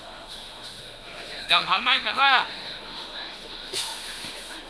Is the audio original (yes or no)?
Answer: no